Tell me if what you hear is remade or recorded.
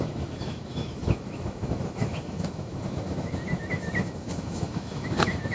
remade